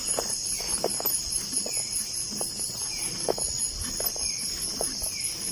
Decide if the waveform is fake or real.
real